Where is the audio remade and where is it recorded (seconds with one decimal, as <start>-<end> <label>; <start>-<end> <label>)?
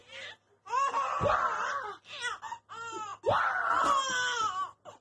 0.0-5.0 recorded